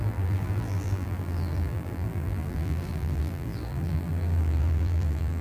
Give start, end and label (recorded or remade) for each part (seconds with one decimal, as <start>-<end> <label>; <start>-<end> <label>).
0.0-5.4 remade